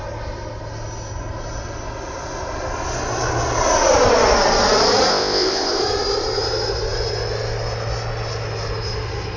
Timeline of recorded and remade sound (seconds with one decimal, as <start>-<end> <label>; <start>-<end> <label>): 0.0-5.1 recorded; 5.1-5.8 remade; 5.8-9.4 recorded